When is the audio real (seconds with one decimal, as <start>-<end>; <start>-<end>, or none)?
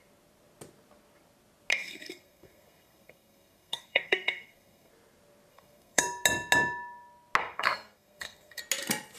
0.0-1.7; 4.9-5.5; 6.0-7.4; 8.6-9.2